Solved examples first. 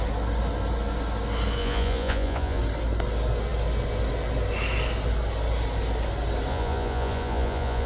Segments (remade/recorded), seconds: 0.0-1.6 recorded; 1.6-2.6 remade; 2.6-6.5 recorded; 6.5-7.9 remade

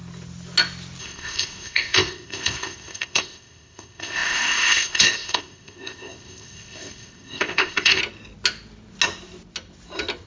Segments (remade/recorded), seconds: 0.0-1.0 recorded; 1.0-8.0 remade; 8.0-10.3 recorded

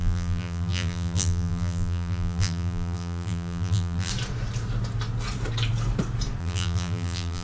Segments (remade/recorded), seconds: 0.0-4.1 remade; 4.1-6.4 recorded; 6.4-7.4 remade

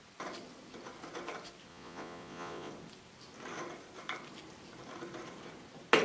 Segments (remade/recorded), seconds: 0.0-1.7 recorded; 1.7-2.7 remade; 2.7-6.0 recorded

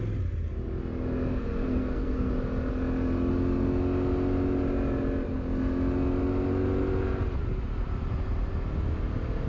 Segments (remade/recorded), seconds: 0.0-1.3 recorded; 1.3-2.3 remade; 2.3-9.5 recorded

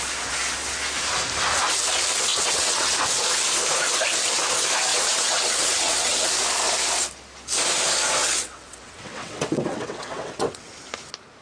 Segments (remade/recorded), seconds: 0.0-2.3 recorded; 2.3-2.9 remade; 2.9-4.9 recorded; 4.9-6.3 remade; 6.3-8.2 recorded; 8.2-10.7 remade; 10.7-11.4 recorded